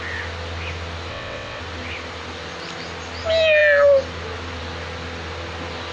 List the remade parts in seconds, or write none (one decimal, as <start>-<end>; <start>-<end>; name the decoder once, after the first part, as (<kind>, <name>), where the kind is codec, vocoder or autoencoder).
1.1-1.6 (vocoder, WaveNeXt)